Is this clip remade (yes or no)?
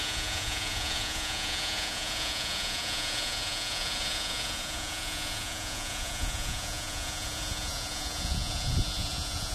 yes